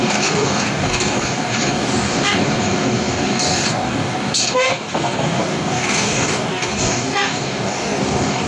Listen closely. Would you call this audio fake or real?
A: fake